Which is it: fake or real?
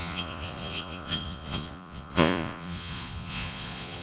fake